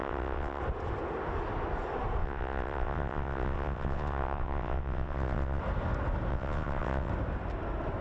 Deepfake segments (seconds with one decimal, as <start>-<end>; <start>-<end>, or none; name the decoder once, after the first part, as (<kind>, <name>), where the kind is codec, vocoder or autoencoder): 0.0-0.6 (vocoder, WaveNeXt); 2.2-5.6; 6.3-7.1